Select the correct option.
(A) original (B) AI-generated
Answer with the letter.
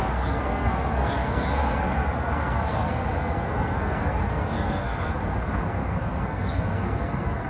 B